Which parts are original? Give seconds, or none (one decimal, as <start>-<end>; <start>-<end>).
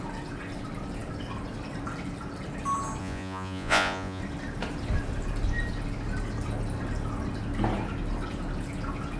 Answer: 0.0-3.0; 4.2-9.2